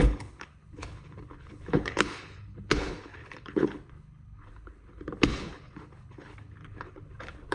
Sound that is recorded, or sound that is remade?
remade